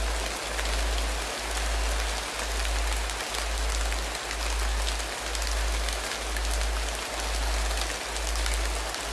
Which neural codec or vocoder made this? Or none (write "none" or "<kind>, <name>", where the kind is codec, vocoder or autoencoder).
none